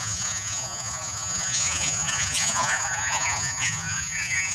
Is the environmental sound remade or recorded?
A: remade